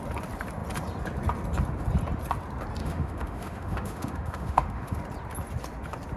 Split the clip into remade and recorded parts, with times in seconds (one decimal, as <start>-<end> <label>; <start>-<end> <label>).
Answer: 0.0-2.8 recorded; 2.8-5.0 remade; 5.0-6.2 recorded